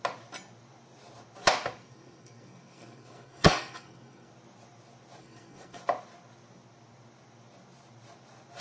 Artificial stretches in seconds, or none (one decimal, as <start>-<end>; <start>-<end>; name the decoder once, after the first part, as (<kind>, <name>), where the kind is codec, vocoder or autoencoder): 1.8-4.3 (codec, SNAC); 5.2-5.8